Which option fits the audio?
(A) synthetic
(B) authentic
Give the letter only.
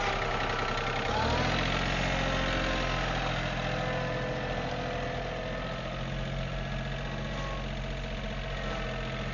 B